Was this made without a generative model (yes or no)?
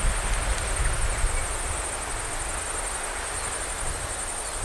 yes